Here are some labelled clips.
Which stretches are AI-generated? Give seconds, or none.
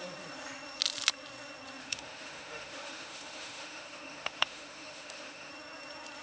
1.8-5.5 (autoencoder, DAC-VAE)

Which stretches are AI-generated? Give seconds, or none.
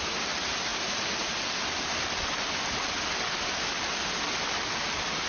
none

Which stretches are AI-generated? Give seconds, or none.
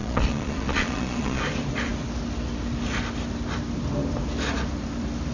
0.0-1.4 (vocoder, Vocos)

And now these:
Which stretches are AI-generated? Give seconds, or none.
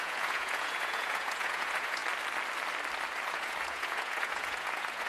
0.0-2.0 (vocoder, Vocos); 3.3-5.1